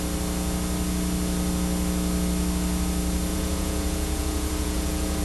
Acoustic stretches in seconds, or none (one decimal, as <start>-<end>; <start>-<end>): 0.0-3.3